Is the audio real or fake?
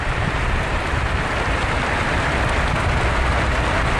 fake